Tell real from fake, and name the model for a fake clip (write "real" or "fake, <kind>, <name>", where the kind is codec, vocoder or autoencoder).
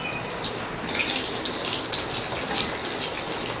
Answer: real